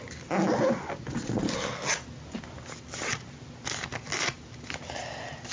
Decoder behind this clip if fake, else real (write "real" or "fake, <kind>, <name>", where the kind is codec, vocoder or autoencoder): real